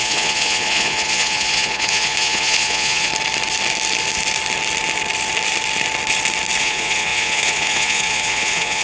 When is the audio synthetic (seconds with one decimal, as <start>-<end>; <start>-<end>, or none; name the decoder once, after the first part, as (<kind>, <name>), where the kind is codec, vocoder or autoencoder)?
0.0-3.1 (vocoder, Vocos); 6.6-8.8

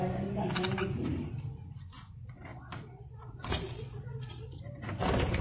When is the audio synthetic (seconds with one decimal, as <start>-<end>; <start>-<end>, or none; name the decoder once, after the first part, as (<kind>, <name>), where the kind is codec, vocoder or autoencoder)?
2.5-4.6 (vocoder, Vocos)

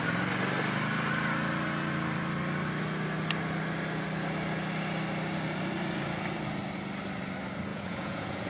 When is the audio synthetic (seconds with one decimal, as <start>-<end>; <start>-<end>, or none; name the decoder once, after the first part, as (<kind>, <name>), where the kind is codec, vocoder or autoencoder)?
7.7-8.5 (vocoder, Vocos)

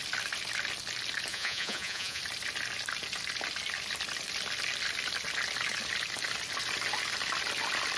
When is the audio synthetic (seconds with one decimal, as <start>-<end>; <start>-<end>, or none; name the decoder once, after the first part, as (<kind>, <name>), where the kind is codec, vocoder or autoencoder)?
1.3-2.2 (vocoder, Vocos)

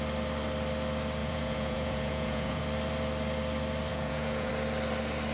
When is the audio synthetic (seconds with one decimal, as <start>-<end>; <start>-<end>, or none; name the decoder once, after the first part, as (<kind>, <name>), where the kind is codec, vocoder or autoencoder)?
1.2-2.6 (vocoder, Vocos); 3.9-4.5

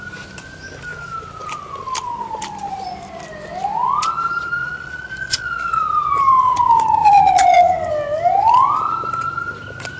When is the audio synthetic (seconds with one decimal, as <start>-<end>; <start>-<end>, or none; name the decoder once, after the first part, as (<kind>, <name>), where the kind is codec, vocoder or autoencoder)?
4.6-5.8 (vocoder, Vocos); 7.0-7.9